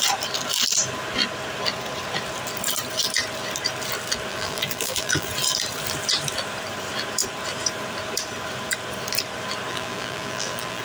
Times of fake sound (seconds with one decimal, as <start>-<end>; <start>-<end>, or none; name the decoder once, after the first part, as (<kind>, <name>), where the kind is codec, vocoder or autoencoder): 4.3-5.3 (vocoder, BigVGAN v2); 9.7-10.8